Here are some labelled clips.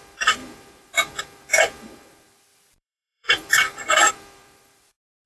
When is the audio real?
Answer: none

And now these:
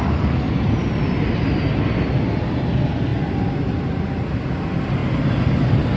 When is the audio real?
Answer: 0.0-0.8; 2.3-5.0; 5.5-6.0

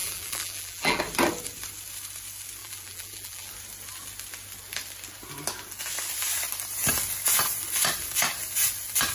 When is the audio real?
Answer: 1.0-2.6; 3.5-9.1

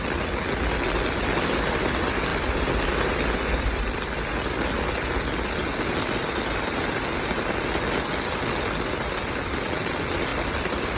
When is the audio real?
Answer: 0.0-2.3; 4.3-10.3

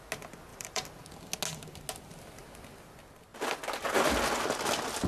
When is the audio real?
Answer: 0.0-0.5; 1.0-5.1